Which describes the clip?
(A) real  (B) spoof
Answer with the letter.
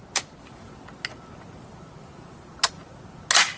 A